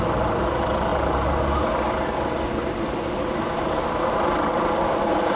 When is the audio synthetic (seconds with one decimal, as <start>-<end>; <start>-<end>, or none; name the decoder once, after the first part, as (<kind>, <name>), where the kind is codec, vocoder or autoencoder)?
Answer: none